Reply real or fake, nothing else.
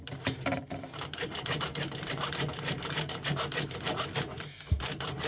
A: fake